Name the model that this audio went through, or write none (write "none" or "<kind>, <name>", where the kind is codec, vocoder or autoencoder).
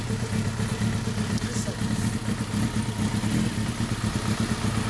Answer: none